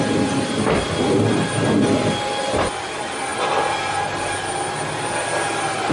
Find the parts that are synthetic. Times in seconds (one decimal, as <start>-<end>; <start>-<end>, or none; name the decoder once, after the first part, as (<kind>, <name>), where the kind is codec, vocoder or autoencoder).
none